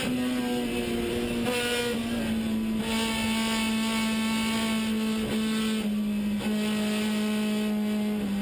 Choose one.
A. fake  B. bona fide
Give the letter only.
B